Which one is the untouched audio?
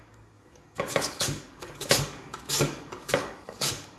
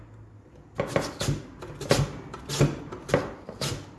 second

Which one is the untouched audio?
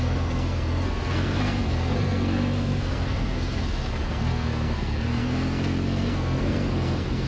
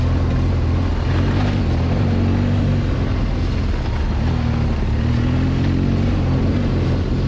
second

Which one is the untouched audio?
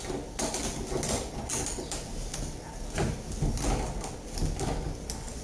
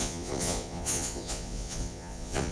first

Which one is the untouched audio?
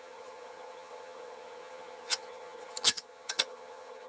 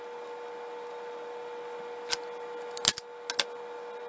second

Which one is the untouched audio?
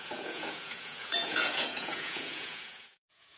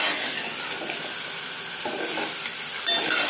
second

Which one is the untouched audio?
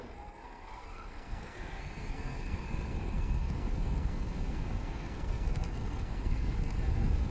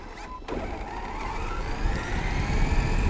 second